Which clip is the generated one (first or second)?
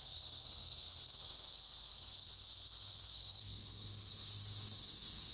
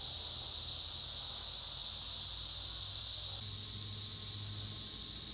first